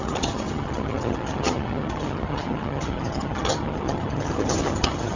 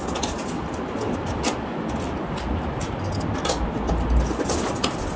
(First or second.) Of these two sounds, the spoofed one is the first